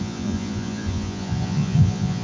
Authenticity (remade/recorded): remade